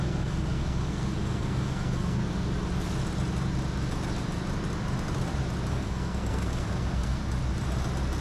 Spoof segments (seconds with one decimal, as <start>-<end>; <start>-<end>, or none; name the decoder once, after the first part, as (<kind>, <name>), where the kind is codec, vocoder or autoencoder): 0.0-2.2 (codec, SNAC); 5.7-7.2